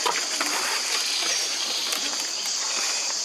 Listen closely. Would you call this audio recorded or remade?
recorded